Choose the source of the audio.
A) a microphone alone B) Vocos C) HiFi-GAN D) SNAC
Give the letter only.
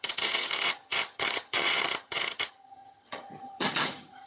C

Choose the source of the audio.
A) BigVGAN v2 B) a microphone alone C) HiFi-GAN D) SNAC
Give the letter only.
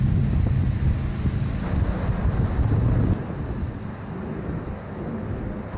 B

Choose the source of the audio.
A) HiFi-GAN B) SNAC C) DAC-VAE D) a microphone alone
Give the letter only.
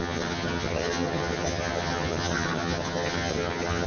A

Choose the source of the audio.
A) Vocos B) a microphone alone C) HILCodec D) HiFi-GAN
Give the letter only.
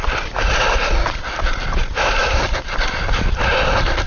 B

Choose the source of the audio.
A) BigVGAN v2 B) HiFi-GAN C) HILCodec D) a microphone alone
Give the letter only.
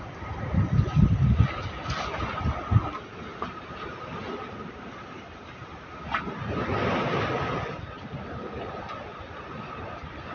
D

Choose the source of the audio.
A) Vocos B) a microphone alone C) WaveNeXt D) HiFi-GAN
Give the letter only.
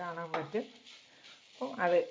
B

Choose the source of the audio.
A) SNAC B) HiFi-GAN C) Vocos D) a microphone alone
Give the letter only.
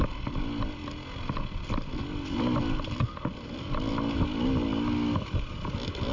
D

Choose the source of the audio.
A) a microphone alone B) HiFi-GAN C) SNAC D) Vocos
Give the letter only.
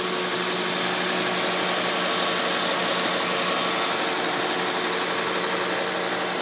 A